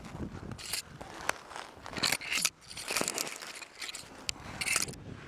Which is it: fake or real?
real